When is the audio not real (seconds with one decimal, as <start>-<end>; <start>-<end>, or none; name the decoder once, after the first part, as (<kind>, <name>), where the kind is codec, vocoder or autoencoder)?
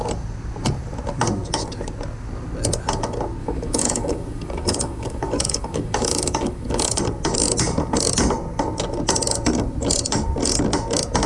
3.4-7.0 (codec, DAC)